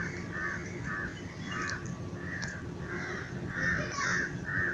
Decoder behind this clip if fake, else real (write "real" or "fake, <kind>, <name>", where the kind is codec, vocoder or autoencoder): real